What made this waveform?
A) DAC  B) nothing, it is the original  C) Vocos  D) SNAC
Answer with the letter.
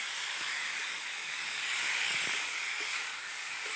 A